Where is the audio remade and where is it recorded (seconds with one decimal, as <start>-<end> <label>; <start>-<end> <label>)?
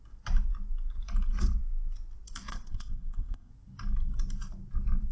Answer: 0.0-2.5 recorded; 2.5-3.5 remade; 3.5-5.1 recorded